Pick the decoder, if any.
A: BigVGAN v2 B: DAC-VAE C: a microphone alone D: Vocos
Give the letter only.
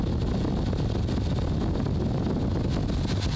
C